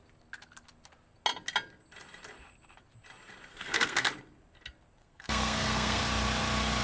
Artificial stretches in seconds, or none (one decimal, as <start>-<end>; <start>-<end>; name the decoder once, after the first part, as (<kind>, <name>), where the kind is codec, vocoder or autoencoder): 3.5-4.1 (codec, SNAC); 5.0-6.0